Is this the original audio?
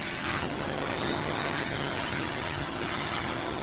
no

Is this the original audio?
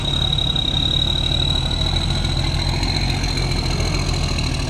yes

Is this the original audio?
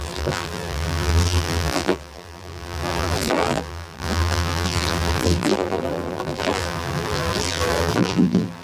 no